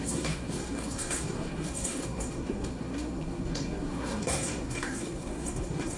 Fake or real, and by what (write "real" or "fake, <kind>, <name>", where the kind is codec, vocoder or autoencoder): fake, codec, SNAC